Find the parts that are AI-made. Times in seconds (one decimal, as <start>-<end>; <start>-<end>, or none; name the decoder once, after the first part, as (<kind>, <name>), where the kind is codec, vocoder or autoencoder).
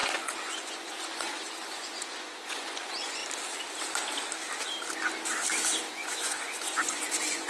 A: 0.0-3.2 (vocoder, Vocos); 5.9-7.5